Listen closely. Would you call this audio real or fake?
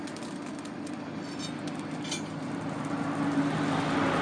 real